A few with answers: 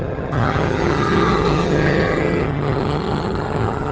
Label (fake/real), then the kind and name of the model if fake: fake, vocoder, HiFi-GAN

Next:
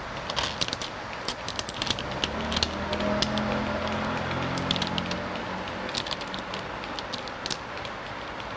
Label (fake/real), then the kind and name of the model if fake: real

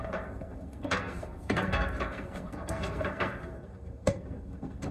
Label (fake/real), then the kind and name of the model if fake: fake, codec, SNAC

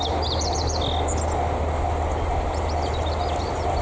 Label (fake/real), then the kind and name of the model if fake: real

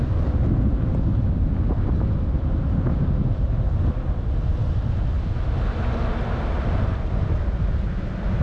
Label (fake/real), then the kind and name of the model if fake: real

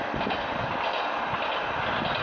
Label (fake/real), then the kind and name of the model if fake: real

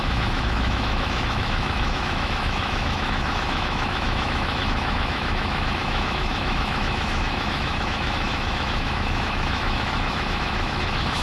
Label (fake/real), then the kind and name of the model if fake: fake, autoencoder, DAC-VAE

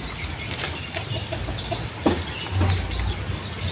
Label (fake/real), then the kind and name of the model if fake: real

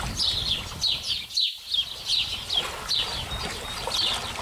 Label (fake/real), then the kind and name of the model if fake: real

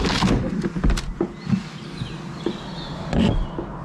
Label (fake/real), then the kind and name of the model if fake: real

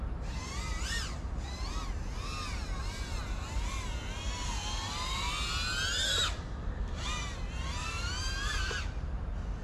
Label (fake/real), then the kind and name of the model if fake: real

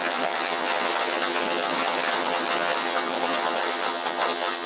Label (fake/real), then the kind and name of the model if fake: fake, vocoder, HiFi-GAN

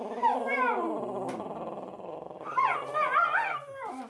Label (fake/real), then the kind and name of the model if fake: real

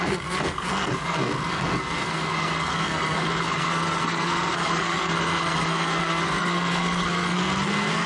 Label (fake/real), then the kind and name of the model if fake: fake, codec, SNAC